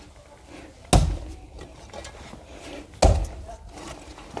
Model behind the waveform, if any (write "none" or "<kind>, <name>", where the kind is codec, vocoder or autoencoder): none